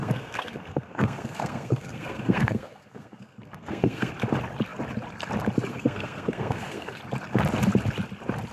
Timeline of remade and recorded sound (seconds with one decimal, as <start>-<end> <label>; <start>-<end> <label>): 0.0-4.1 remade; 4.1-5.7 recorded; 5.7-7.0 remade; 7.0-8.5 recorded